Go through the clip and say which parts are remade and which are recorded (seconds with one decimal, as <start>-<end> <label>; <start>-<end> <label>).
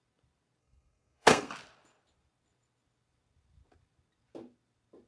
0.0-0.6 recorded; 0.6-1.5 remade; 1.5-5.1 recorded